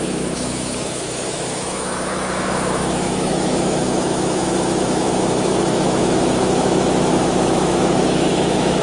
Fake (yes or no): yes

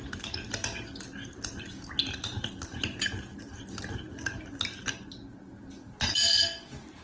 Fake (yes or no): no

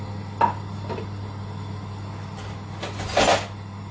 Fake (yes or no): no